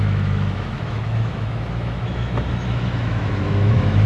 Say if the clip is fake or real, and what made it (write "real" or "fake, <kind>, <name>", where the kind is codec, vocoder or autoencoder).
fake, autoencoder, DAC-VAE